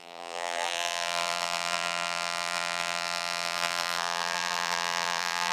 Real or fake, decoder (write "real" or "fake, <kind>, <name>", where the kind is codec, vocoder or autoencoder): fake, vocoder, BigVGAN v2